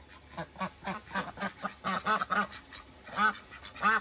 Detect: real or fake real